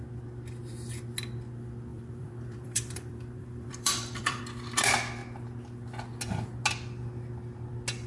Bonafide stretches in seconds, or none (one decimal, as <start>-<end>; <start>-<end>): 0.0-1.9; 4.4-8.1